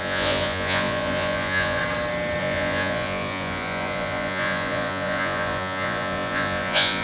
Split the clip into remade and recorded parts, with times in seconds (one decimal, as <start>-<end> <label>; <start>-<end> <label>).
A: 0.0-1.8 remade; 1.8-2.4 recorded; 2.4-7.0 remade